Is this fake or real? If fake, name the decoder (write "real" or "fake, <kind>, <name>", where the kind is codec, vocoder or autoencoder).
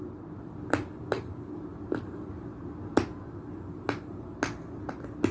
real